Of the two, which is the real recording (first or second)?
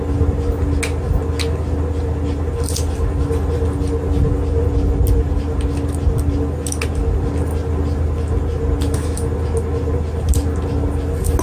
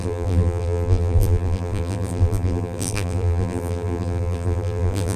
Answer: first